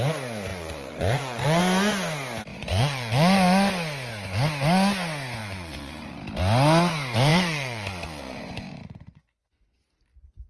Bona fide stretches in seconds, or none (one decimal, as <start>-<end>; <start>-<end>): 0.0-0.5; 1.6-2.5; 3.7-5.4; 6.2-7.3; 9.8-10.5